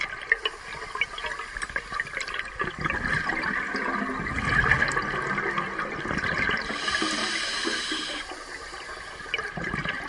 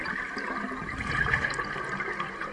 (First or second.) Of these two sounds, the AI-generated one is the second